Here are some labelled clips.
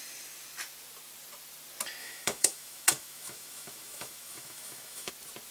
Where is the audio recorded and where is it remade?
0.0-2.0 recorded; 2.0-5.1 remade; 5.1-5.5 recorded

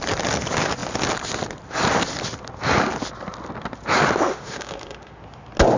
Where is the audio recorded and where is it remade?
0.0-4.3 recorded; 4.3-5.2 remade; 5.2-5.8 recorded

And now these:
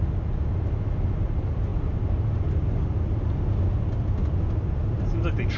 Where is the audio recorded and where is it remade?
0.0-1.7 recorded; 1.7-2.5 remade; 2.5-5.6 recorded

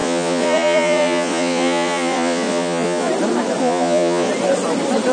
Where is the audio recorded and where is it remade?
0.0-3.1 remade; 3.1-3.6 recorded; 3.6-4.3 remade; 4.3-5.1 recorded

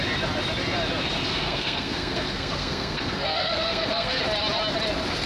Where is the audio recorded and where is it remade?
0.0-1.3 recorded; 1.3-4.2 remade; 4.2-5.3 recorded

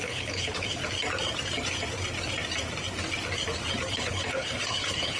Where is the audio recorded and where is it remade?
0.0-0.8 remade; 0.8-3.9 recorded; 3.9-5.2 remade

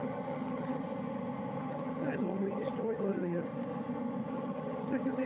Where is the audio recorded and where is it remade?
0.0-0.8 remade; 0.8-1.6 recorded; 1.6-3.5 remade; 3.5-4.3 recorded; 4.3-5.3 remade